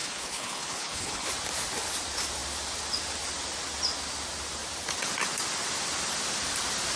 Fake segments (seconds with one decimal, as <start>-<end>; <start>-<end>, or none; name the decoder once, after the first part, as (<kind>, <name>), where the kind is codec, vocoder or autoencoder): 0.0-1.3 (codec, HILCodec)